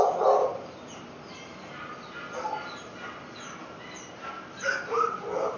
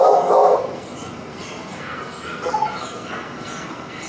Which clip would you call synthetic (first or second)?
second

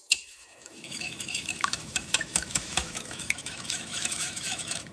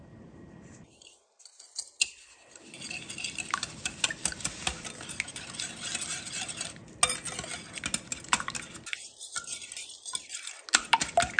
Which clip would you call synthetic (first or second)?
first